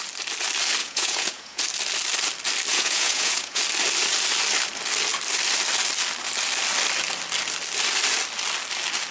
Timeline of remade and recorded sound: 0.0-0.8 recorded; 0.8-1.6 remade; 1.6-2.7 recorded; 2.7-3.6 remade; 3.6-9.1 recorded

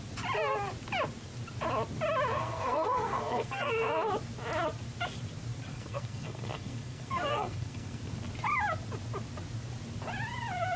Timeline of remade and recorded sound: 0.0-2.3 recorded; 2.3-3.7 remade; 3.7-5.7 recorded; 5.7-8.0 remade; 8.0-10.8 recorded

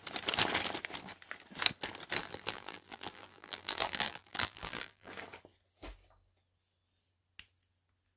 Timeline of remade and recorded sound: 0.0-2.2 recorded; 2.2-5.1 remade; 5.1-8.2 recorded